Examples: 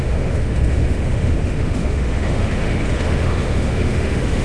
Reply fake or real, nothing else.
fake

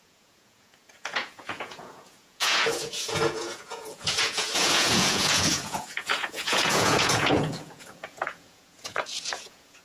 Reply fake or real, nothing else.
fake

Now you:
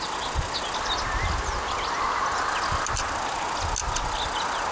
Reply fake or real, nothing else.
real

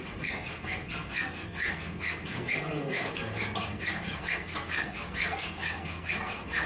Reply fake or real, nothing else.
fake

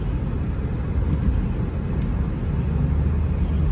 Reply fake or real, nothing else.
real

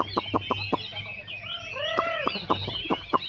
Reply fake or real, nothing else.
real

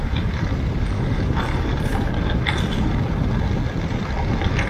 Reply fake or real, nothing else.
real